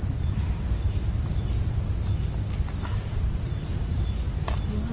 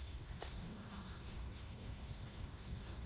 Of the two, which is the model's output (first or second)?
second